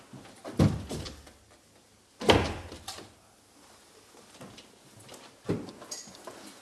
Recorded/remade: recorded